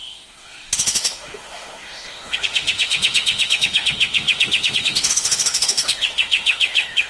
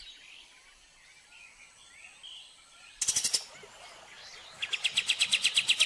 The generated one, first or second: first